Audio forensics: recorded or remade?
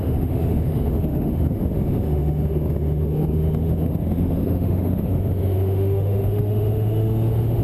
remade